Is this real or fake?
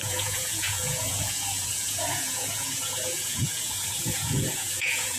fake